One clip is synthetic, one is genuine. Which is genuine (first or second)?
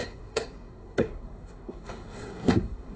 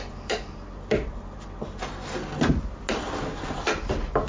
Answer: second